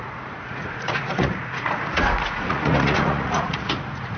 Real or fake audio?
fake